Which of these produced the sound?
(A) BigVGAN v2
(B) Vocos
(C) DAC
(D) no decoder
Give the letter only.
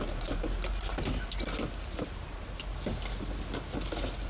D